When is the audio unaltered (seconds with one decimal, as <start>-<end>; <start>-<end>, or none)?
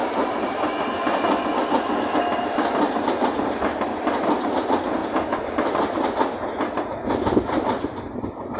0.9-5.0; 6.0-8.6